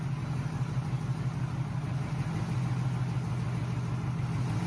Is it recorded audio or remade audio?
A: recorded